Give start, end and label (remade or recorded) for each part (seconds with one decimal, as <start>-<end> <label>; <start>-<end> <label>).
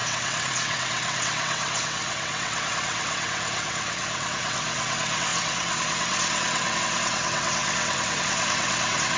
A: 0.0-9.2 remade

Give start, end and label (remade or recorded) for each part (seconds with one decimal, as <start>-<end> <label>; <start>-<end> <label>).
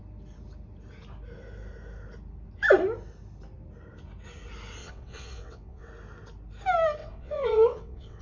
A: 0.0-4.8 recorded; 4.8-5.9 remade; 5.9-7.0 recorded; 7.0-8.2 remade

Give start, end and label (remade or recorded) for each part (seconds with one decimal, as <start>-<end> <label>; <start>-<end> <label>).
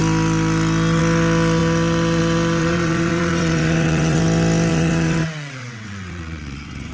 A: 0.0-2.6 recorded; 2.6-4.2 remade; 4.2-4.7 recorded; 4.7-6.9 remade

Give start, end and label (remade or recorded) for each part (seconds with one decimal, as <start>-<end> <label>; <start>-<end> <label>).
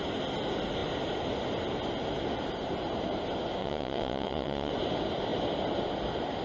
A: 0.0-3.6 recorded; 3.6-4.7 remade; 4.7-6.4 recorded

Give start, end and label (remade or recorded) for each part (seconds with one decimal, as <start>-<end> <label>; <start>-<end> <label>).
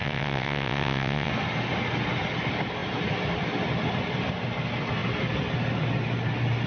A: 0.0-1.3 remade; 1.3-6.7 recorded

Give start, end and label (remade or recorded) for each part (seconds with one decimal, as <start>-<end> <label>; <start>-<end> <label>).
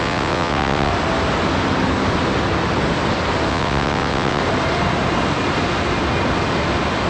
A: 0.0-0.9 remade; 0.9-3.5 recorded; 3.5-4.4 remade; 4.4-7.1 recorded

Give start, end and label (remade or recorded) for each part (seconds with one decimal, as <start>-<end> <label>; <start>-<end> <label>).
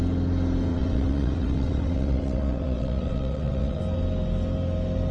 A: 0.0-0.7 recorded; 0.7-3.8 remade; 3.8-5.1 recorded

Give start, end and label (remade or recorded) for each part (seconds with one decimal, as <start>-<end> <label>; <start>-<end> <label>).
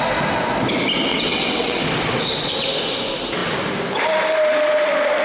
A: 0.0-1.1 recorded; 1.1-1.8 remade; 1.8-5.2 recorded